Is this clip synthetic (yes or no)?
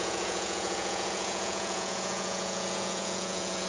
yes